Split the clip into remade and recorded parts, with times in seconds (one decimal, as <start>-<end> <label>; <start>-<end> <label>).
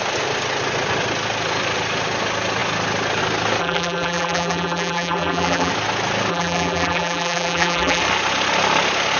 0.0-3.6 recorded; 3.6-5.7 remade; 5.7-6.3 recorded; 6.3-8.0 remade; 8.0-9.2 recorded